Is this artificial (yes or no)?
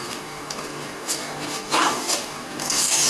yes